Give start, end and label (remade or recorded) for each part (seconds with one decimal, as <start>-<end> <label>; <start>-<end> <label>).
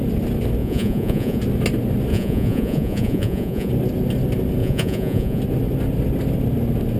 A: 0.0-0.6 recorded; 0.6-1.4 remade; 1.4-2.1 recorded; 2.1-3.7 remade; 3.7-4.6 recorded; 4.6-5.4 remade; 5.4-7.0 recorded